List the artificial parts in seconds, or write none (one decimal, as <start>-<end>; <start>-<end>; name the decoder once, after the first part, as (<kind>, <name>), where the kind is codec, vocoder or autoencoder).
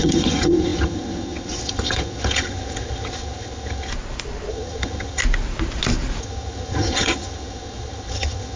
0.0-3.9 (vocoder, HiFi-GAN); 4.5-5.2; 6.2-8.6